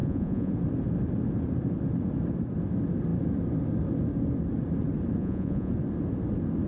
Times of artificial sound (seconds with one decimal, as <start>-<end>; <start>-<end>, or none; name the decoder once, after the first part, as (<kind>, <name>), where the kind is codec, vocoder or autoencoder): 0.0-0.5 (vocoder, Vocos); 5.2-5.7